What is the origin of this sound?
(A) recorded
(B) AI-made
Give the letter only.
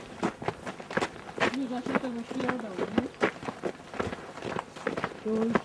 A